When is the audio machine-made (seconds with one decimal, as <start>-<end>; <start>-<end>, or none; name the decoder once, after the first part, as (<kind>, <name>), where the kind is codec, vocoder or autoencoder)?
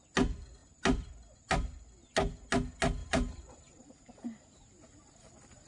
3.0-5.7 (vocoder, BigVGAN v2)